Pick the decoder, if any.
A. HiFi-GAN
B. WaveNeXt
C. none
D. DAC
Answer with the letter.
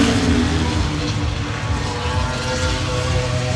C